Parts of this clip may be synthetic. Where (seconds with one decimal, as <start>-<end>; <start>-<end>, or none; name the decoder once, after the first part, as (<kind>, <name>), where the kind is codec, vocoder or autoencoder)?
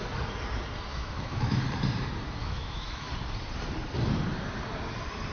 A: 0.9-1.6 (autoencoder, DAC-VAE); 2.4-3.1